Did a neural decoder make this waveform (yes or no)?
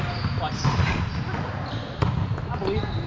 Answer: no